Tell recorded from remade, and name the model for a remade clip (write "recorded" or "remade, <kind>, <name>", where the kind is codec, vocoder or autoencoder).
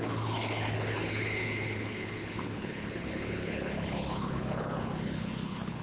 remade, codec, HILCodec